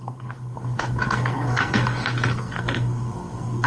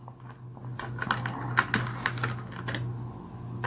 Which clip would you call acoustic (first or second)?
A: second